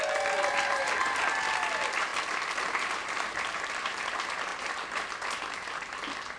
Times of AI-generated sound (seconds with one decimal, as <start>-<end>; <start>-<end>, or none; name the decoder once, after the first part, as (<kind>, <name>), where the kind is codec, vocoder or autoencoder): none